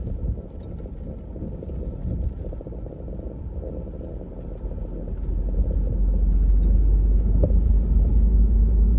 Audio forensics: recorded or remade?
recorded